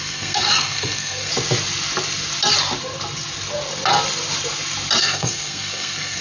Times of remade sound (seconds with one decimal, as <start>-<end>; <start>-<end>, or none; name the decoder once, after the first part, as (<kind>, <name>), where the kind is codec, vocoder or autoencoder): 0.0-1.3 (codec, SNAC); 5.0-6.2